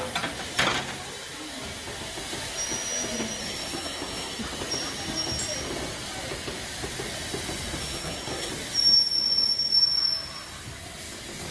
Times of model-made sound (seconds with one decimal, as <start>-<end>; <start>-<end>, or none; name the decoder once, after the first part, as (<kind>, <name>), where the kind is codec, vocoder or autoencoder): 3.4-4.4 (codec, SNAC); 7.8-8.5